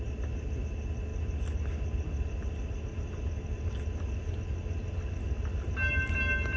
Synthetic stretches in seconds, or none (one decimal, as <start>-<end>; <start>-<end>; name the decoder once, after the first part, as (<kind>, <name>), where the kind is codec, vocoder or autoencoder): none